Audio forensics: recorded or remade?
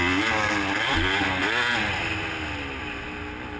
recorded